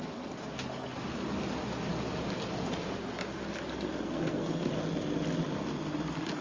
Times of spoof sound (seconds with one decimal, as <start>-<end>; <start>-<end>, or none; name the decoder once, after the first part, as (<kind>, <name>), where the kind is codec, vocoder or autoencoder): 4.0-4.7 (codec, SNAC)